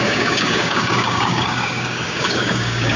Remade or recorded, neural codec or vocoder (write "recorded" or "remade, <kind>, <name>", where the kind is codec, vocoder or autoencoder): remade, codec, DAC